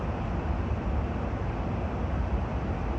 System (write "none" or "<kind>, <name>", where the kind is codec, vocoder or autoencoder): none